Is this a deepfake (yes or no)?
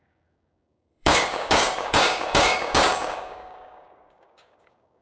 yes